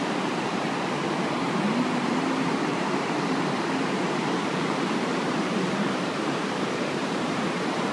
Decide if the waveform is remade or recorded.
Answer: remade